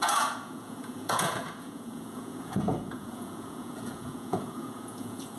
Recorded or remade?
remade